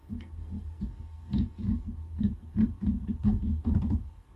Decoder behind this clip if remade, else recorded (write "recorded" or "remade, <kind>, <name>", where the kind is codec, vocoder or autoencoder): remade, codec, SNAC